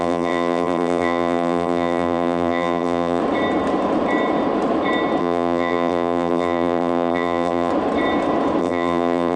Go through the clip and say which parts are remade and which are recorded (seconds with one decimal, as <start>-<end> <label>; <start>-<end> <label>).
0.0-3.2 remade; 3.2-5.2 recorded; 5.2-7.7 remade; 7.7-8.6 recorded; 8.6-9.4 remade